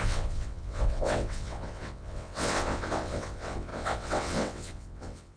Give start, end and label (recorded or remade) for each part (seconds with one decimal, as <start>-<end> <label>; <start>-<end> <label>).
0.0-5.4 remade